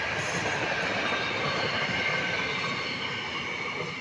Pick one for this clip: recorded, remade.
recorded